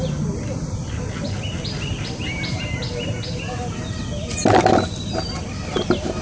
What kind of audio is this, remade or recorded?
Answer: recorded